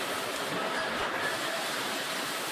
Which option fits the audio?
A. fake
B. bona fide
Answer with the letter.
B